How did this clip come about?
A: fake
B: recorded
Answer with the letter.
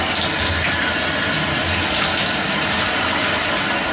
B